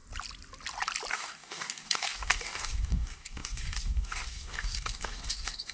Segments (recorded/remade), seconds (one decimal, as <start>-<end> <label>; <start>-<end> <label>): 0.0-1.1 recorded; 1.1-5.7 remade